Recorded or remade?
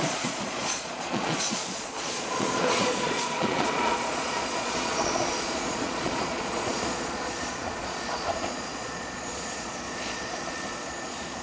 remade